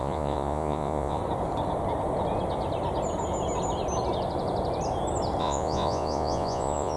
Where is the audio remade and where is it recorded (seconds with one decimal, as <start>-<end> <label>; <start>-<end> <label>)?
0.0-1.2 remade; 1.2-5.4 recorded; 5.4-7.0 remade